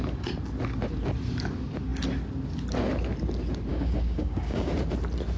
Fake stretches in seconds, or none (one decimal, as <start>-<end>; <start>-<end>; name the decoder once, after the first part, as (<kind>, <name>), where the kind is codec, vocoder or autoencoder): 3.7-4.7 (codec, DAC)